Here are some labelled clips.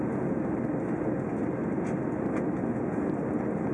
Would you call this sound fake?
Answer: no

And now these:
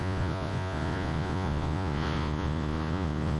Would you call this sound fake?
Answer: yes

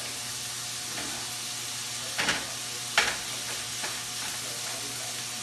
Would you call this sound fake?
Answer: no